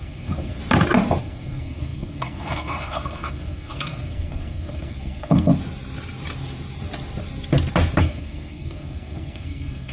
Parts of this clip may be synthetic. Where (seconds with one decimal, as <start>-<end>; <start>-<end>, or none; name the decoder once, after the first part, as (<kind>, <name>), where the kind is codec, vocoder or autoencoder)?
0.0-0.6 (codec, SNAC); 1.2-5.5; 8.0-9.9

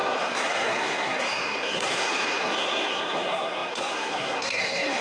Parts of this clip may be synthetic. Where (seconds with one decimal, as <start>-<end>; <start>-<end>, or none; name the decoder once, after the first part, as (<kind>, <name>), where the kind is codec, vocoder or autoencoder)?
0.0-5.0 (codec, SNAC)